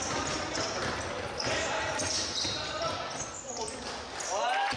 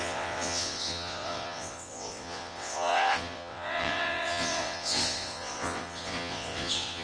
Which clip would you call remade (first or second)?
second